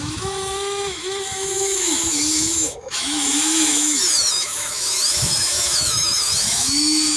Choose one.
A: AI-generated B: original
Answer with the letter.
A